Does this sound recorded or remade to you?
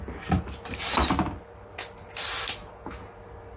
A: recorded